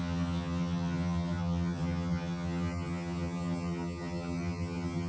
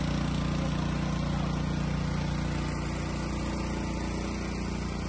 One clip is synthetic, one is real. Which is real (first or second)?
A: second